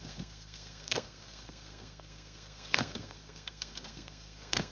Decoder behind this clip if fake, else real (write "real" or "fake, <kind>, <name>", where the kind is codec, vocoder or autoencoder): fake, codec, SNAC